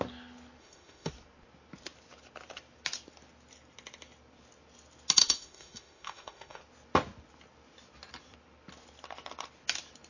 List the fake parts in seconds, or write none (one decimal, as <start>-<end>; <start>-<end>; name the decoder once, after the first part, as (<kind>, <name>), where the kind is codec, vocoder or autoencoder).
0.6-1.1 (autoencoder, DAC-VAE); 5.2-6.6